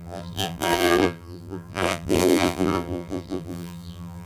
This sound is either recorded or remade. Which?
remade